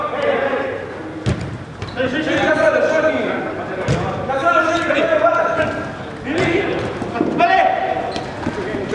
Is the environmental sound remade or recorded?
recorded